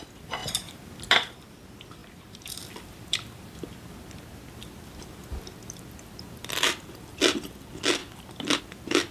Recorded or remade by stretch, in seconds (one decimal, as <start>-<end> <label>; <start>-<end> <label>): 0.0-2.0 recorded; 2.0-3.6 remade; 3.6-9.1 recorded